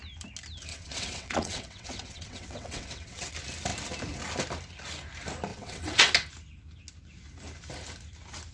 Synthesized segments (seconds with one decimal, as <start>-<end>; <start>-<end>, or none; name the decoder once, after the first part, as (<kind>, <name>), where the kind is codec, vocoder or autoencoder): 0.7-3.3 (vocoder, WaveNeXt); 5.5-6.1